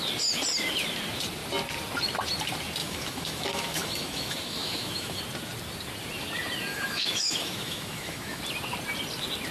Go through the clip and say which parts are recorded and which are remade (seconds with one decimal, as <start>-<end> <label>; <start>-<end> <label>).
0.0-2.8 recorded; 2.8-5.2 remade; 5.2-6.7 recorded; 6.7-8.4 remade; 8.4-9.5 recorded